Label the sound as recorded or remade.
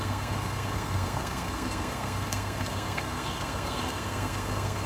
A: remade